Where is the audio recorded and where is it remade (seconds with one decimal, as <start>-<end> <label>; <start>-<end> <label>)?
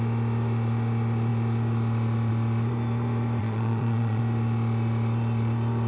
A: 0.0-3.4 recorded; 3.4-4.2 remade; 4.2-5.9 recorded